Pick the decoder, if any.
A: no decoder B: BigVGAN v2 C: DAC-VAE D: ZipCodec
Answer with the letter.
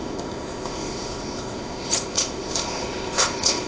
D